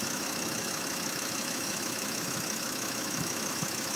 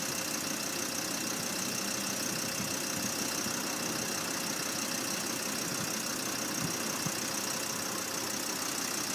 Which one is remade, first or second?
first